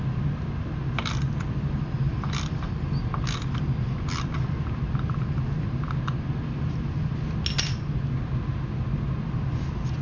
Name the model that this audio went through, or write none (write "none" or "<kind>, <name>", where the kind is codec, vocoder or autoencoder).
none